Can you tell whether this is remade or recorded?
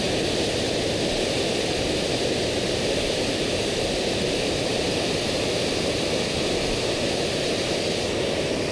remade